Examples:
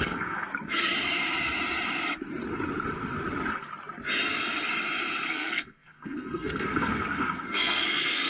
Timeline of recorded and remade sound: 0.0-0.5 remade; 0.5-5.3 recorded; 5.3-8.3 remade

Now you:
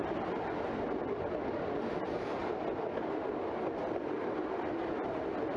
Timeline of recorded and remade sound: 0.0-5.6 recorded

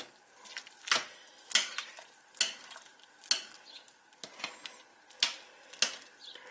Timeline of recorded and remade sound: 0.0-6.5 recorded

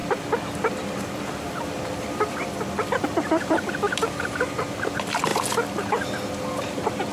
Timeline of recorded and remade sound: 0.0-4.3 remade; 4.3-7.1 recorded

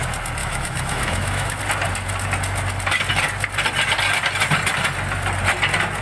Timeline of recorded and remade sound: 0.0-0.4 recorded; 0.4-1.6 remade; 1.6-6.0 recorded

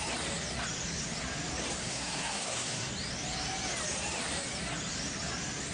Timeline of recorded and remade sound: 0.0-1.8 recorded; 1.8-2.9 remade; 2.9-5.7 recorded

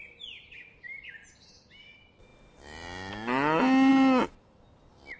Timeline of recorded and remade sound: 0.0-5.2 recorded

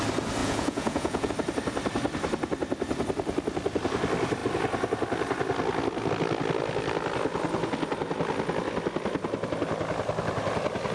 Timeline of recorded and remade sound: 0.0-0.4 recorded; 0.4-1.3 remade; 1.3-10.9 recorded